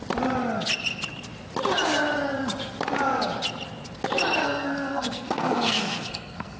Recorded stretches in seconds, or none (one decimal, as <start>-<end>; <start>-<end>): 0.0-4.4